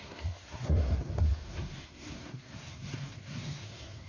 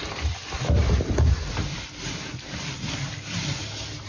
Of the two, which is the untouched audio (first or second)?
second